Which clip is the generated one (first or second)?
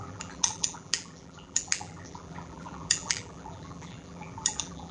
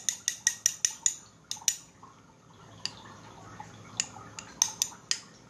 first